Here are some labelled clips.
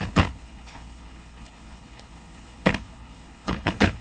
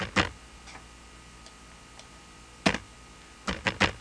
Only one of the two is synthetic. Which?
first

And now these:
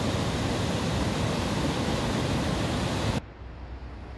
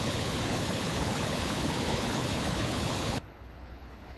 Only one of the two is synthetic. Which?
second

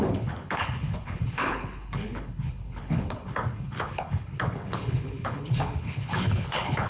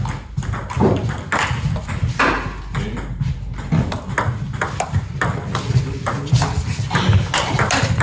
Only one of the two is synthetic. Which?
first